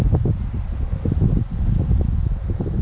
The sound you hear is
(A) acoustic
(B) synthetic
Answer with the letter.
A